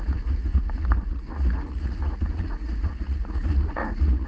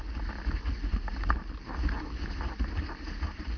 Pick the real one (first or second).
second